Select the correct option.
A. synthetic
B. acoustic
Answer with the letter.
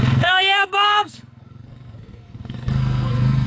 A